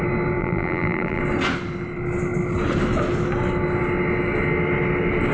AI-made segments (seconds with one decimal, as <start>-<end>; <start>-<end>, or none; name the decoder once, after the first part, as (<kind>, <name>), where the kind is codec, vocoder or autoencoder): 0.4-1.2 (vocoder, BigVGAN v2)